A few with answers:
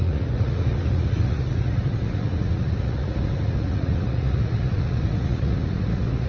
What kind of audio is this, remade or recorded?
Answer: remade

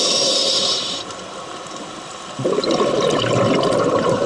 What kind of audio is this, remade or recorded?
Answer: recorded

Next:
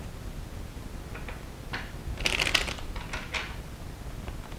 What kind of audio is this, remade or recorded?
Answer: recorded